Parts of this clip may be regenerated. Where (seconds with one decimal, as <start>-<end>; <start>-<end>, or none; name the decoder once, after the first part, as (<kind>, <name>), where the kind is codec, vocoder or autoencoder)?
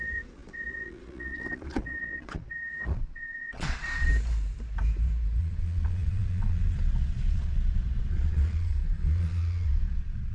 0.0-4.1 (vocoder, Vocos); 5.4-10.3